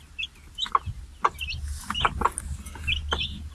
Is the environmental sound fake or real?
real